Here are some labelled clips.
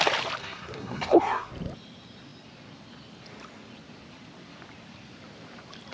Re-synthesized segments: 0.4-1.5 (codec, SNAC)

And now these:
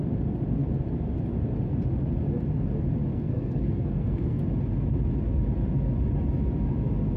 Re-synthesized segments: 3.1-4.4 (codec, SNAC)

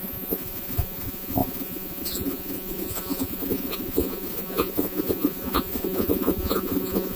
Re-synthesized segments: 0.0-7.2 (vocoder, Vocos)

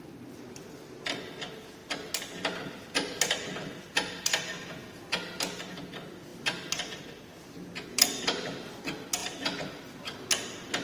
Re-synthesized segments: none

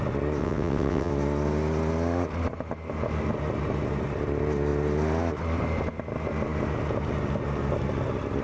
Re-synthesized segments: 0.4-1.1 (vocoder, WaveNeXt)

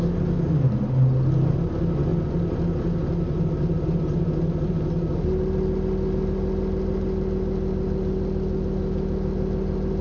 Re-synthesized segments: none

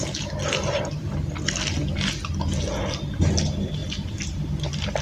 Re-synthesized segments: 3.8-5.0 (vocoder, BigVGAN v2)